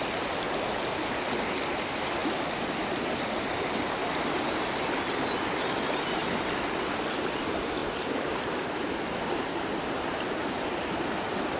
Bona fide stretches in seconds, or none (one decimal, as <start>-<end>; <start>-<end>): 0.0-11.6